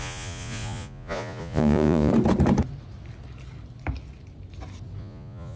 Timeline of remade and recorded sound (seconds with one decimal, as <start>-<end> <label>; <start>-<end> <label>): 0.0-2.1 remade; 2.1-5.0 recorded; 5.0-5.6 remade